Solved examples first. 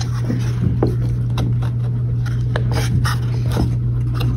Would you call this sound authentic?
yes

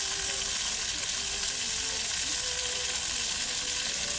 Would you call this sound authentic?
yes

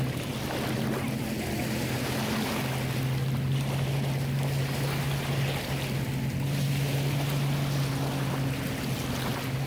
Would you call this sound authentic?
yes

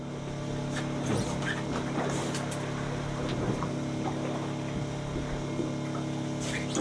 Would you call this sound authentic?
yes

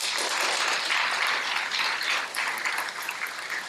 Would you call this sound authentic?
yes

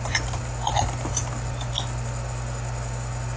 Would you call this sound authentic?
yes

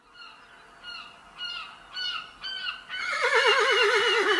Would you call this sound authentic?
yes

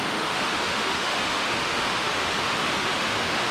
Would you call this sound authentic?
no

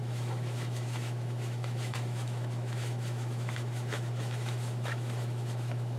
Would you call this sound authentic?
no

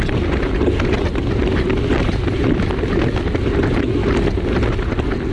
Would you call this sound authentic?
yes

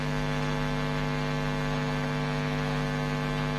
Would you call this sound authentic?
yes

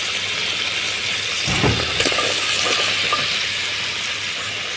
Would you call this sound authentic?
yes